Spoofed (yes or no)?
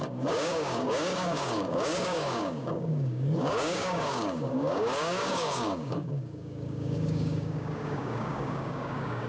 yes